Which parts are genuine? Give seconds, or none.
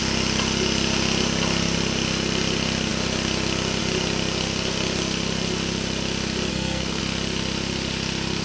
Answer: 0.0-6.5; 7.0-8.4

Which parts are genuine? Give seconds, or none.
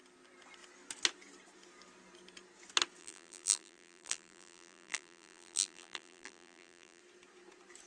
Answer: 0.0-3.0; 7.0-7.9